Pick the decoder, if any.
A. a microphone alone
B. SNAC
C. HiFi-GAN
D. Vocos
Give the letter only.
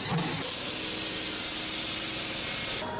A